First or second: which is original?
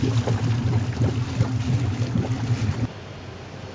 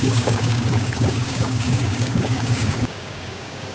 first